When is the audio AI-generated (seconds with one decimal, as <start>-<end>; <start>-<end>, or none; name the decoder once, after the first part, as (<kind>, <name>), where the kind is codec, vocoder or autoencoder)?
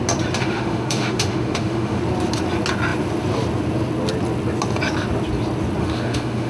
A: 0.4-2.0 (autoencoder, DAC-VAE); 5.8-6.5